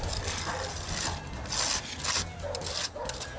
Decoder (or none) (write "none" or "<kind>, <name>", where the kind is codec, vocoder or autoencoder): none